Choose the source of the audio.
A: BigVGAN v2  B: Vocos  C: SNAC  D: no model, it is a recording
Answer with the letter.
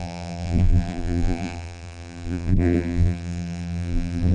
A